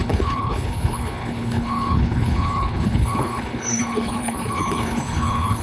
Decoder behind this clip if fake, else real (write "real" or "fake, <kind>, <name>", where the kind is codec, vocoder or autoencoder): fake, codec, HILCodec